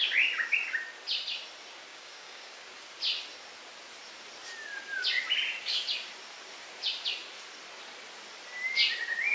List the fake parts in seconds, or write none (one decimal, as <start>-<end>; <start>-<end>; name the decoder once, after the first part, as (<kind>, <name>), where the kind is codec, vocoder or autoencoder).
1.9-2.6 (codec, DAC)